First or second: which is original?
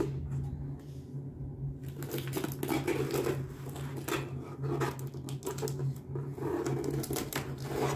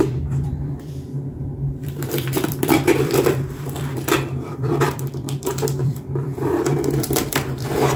first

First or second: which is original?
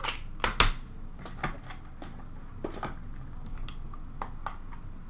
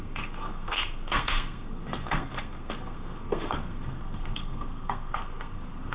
first